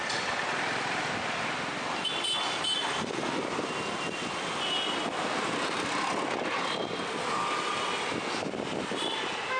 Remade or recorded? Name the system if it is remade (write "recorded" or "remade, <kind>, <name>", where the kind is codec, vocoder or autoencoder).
recorded